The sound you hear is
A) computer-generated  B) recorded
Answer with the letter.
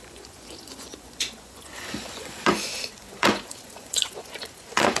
A